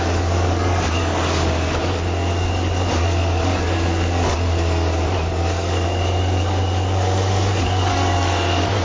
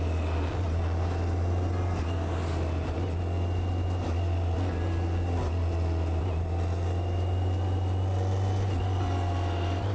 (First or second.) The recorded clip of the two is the second